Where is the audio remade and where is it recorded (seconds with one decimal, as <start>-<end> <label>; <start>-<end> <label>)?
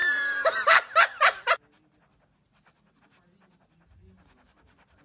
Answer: 0.0-5.0 recorded